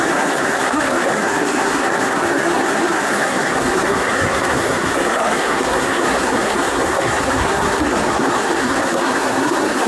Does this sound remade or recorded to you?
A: remade